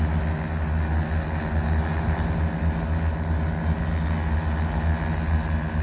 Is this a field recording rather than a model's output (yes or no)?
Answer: yes